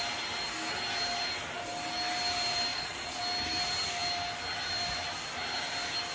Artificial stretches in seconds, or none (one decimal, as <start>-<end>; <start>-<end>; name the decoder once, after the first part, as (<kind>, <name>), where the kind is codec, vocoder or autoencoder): 2.7-3.2 (vocoder, Vocos)